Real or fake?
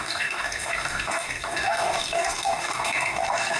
fake